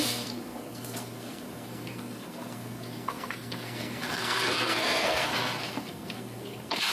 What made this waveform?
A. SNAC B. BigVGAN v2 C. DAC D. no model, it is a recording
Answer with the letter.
A